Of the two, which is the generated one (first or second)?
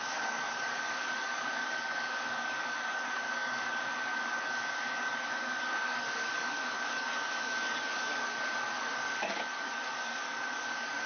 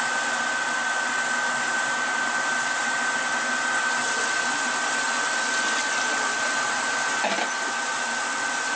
first